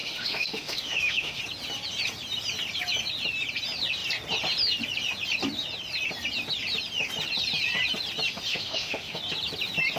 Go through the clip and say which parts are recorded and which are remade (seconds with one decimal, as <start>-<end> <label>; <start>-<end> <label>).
0.0-1.4 remade; 1.4-8.5 recorded; 8.5-9.2 remade; 9.2-10.0 recorded